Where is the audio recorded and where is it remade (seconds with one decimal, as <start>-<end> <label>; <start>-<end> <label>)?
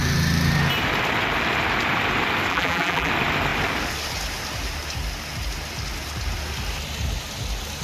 0.0-2.5 recorded; 2.5-3.1 remade; 3.1-7.8 recorded